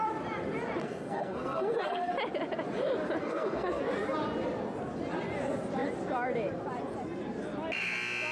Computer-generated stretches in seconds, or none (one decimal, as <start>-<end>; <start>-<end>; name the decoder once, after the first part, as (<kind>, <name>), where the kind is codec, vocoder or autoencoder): 0.8-2.1 (codec, SNAC); 3.2-3.8